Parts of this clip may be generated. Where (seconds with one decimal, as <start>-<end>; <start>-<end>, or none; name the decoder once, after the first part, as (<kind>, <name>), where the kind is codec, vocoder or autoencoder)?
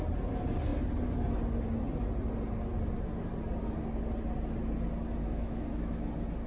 5.2-6.1 (autoencoder, DAC-VAE)